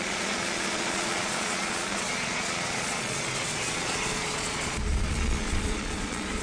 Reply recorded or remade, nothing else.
remade